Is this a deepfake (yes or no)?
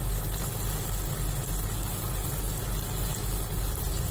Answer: no